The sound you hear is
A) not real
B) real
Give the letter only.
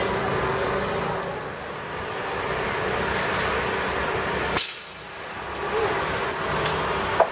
B